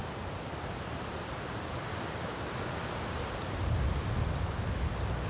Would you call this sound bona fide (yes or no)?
yes